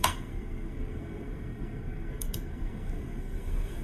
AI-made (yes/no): yes